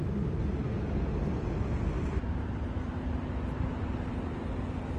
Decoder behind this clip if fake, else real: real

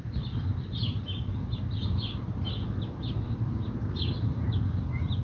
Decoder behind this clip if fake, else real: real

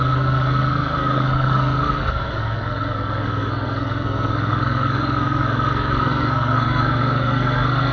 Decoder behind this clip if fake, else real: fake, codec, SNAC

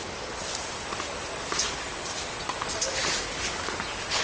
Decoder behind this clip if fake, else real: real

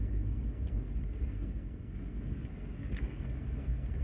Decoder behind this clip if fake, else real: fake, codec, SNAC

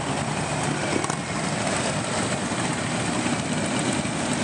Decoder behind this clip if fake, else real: real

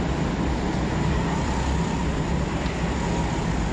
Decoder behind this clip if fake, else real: real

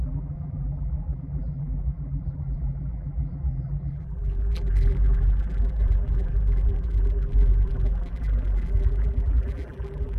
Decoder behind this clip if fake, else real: fake, vocoder, BigVGAN v2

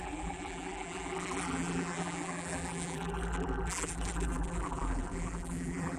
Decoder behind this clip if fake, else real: fake, vocoder, BigVGAN v2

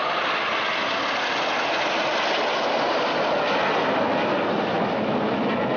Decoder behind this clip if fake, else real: real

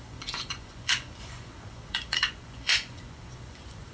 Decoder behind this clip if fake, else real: fake, vocoder, Vocos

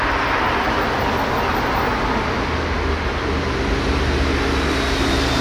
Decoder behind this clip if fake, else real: real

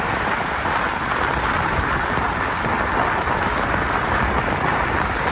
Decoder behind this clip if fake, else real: real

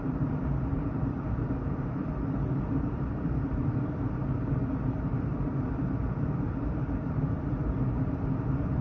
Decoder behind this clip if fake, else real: fake, vocoder, BigVGAN v2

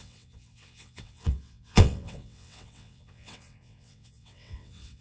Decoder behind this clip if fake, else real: fake, vocoder, WaveNeXt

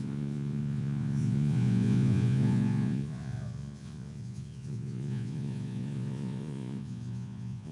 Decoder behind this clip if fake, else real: fake, vocoder, Vocos